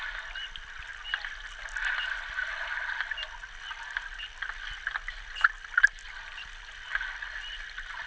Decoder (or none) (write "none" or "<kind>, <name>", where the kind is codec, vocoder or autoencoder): none